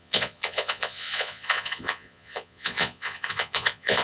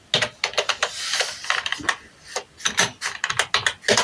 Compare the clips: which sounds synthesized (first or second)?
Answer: first